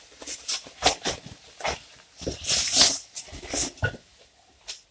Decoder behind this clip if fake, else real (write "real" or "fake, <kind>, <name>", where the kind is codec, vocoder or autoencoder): real